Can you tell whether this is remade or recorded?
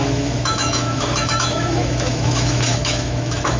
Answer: remade